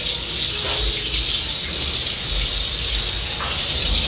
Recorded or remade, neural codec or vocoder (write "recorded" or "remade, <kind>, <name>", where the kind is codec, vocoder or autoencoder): recorded